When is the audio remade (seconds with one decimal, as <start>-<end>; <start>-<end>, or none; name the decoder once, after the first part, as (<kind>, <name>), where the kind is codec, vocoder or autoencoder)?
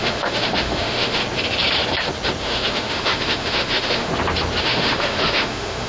0.0-1.2 (autoencoder, DAC-VAE); 2.4-4.1; 4.6-5.9